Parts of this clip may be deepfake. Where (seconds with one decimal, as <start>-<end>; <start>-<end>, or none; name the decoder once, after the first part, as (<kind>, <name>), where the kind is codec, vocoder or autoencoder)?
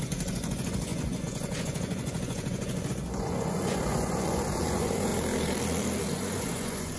0.0-5.1 (vocoder, Vocos); 6.0-7.0